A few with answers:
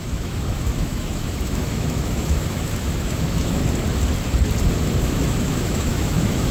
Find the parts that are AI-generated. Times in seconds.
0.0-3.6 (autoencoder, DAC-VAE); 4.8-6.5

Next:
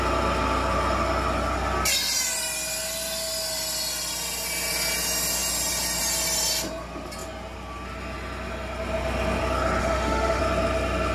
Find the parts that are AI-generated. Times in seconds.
9.8-10.4 (autoencoder, DAC-VAE)

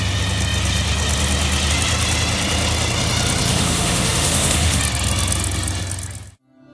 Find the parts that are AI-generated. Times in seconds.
3.5-4.8 (autoencoder, DAC-VAE)

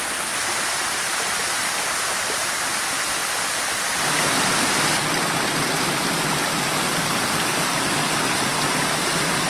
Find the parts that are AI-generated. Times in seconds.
none

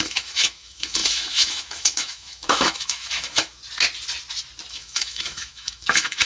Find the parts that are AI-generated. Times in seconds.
0.0-3.6 (autoencoder, DAC-VAE); 4.7-6.3

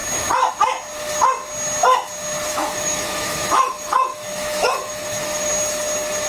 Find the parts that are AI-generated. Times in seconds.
2.5-5.5 (autoencoder, DAC-VAE)

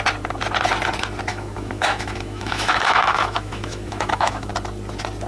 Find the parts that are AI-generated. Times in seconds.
1.3-4.5 (autoencoder, DAC-VAE)

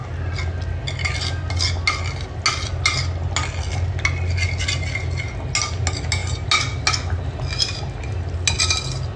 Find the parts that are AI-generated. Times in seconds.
none